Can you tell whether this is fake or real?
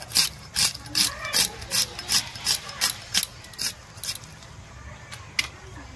real